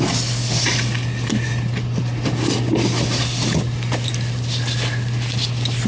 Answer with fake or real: real